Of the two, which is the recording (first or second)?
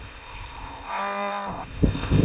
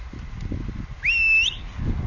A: second